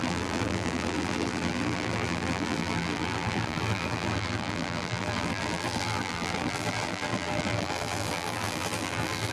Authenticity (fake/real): fake